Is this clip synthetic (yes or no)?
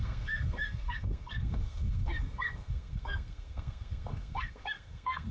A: yes